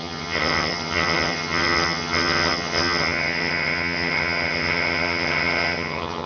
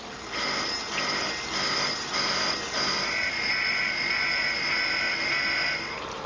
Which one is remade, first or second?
first